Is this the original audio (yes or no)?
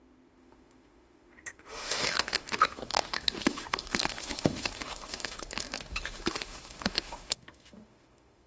no